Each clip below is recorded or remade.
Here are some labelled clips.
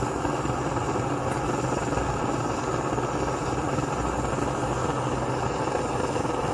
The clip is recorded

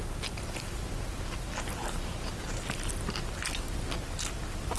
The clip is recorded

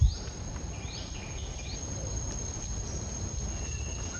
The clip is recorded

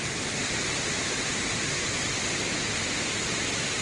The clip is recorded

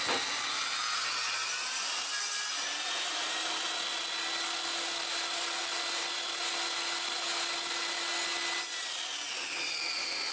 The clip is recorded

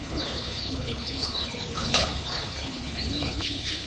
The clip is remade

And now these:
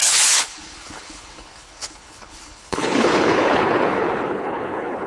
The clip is remade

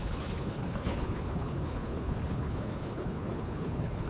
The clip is remade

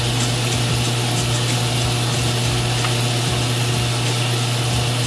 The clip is recorded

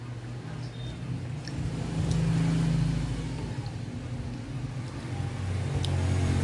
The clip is recorded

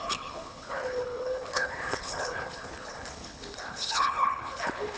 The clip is remade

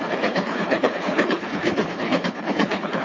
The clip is remade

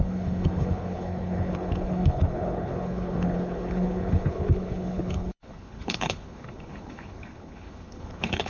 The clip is remade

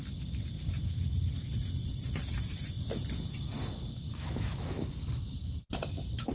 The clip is recorded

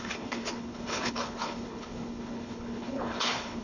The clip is remade